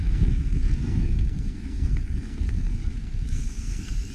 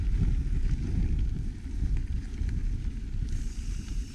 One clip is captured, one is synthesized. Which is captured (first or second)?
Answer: second